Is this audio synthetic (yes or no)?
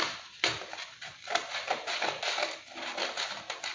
no